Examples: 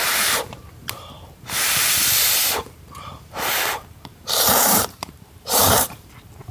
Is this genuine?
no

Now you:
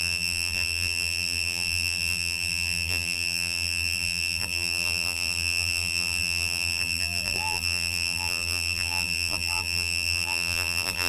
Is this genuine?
no